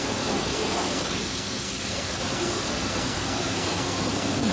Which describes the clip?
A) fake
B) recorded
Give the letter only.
A